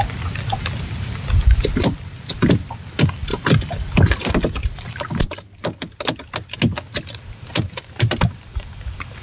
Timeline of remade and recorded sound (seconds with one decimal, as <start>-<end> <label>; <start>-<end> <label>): 0.0-9.2 recorded